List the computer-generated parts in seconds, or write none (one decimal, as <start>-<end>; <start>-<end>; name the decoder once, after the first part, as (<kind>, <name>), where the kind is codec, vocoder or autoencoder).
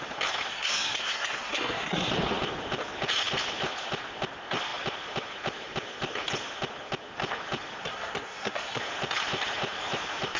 0.5-2.1 (codec, SNAC); 7.8-8.8